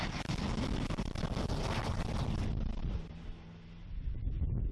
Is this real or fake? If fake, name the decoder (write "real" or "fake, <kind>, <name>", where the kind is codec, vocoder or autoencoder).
real